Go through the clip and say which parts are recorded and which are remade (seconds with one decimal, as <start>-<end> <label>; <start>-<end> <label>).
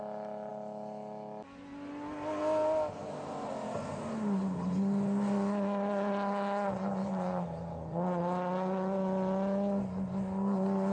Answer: 0.0-10.9 recorded